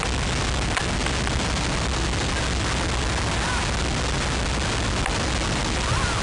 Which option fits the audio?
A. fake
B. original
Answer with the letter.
B